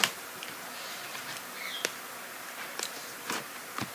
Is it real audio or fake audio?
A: fake